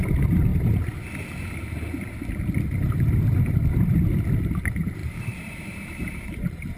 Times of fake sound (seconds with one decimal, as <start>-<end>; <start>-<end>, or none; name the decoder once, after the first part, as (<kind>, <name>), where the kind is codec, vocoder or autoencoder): 5.0-6.8 (vocoder, BigVGAN v2)